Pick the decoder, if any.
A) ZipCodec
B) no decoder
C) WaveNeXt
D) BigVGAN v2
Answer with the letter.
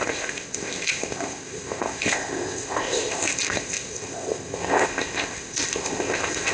A